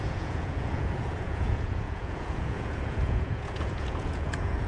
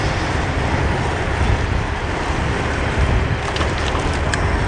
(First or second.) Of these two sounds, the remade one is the first